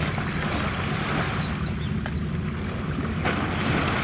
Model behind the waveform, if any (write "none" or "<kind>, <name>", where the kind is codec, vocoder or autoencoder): none